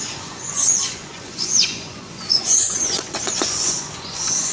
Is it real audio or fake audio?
fake